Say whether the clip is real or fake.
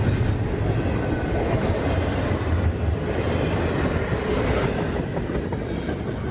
real